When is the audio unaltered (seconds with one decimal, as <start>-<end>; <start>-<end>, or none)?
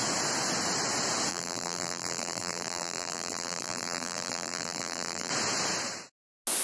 0.0-1.3; 5.3-6.6